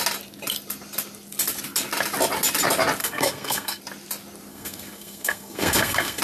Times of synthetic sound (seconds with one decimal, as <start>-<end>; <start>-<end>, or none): 3.0-3.8; 4.5-6.2